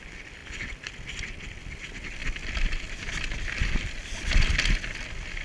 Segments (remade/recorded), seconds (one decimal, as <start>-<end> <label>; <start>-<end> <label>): 0.0-5.4 recorded